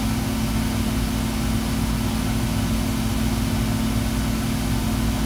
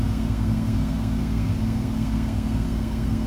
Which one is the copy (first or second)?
second